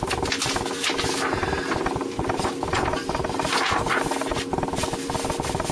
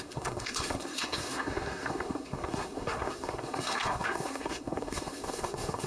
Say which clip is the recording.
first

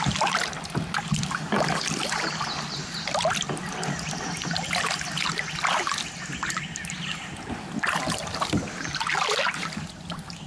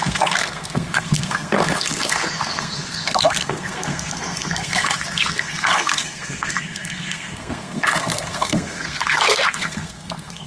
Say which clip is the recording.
first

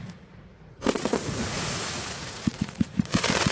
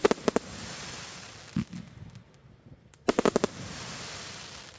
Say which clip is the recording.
second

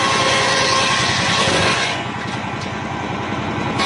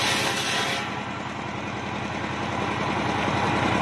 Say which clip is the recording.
second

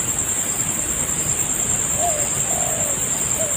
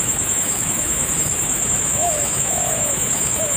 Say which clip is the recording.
first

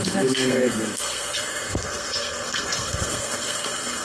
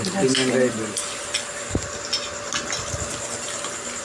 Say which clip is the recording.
second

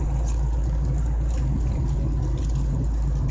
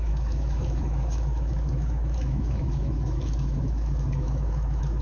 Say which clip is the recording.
first